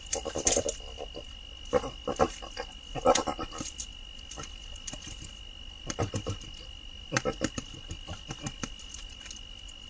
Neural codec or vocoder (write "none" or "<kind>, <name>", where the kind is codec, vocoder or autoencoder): none